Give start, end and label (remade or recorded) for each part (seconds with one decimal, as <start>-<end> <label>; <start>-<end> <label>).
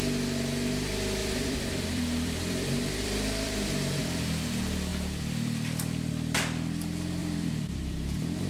0.0-1.2 recorded; 1.2-4.0 remade; 4.0-4.9 recorded; 4.9-6.1 remade; 6.1-7.2 recorded; 7.2-8.5 remade